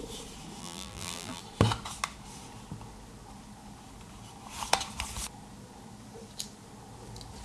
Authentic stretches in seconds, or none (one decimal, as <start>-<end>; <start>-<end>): 0.0-0.6; 1.4-7.4